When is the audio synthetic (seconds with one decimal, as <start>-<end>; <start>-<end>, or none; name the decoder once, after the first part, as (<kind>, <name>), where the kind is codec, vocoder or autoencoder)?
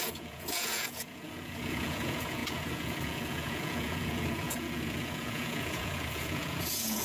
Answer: 0.0-7.0 (vocoder, Vocos)